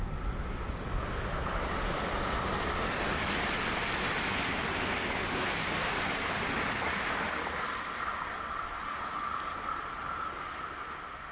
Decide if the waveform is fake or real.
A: real